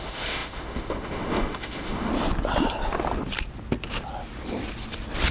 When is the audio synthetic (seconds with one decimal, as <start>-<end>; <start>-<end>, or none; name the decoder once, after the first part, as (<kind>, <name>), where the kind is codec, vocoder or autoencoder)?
0.0-2.1 (autoencoder, DAC-VAE)